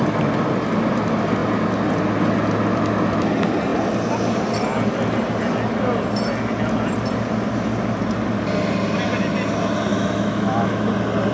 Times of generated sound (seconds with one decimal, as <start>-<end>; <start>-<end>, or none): 9.9-10.9